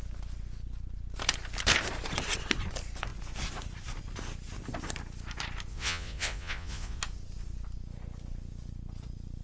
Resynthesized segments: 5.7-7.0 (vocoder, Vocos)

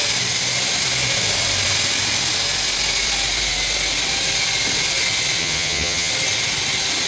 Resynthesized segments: 5.4-6.1 (vocoder, HiFi-GAN)

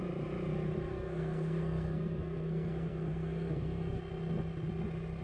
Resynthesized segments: 0.9-4.0 (codec, SNAC)

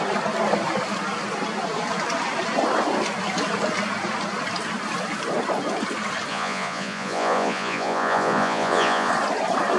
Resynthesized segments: 6.3-9.1 (vocoder, Vocos)

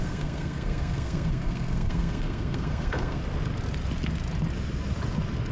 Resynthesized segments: 0.0-3.2 (codec, SNAC)

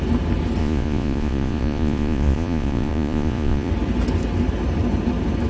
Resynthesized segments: 0.6-3.7 (vocoder, Vocos)

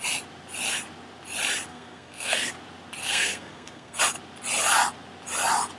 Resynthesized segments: 1.7-2.5 (codec, SNAC); 3.0-4.0

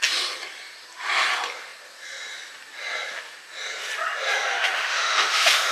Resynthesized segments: 4.5-5.7 (autoencoder, DAC-VAE)